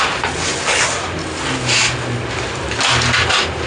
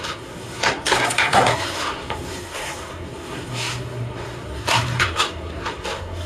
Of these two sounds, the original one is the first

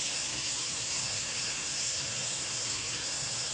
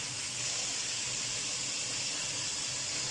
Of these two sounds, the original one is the second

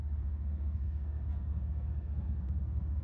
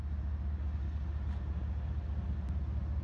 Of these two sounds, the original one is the second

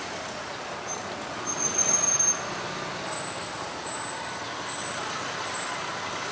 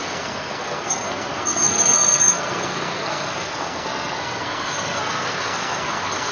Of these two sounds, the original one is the first